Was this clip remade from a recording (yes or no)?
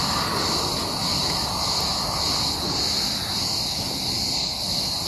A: no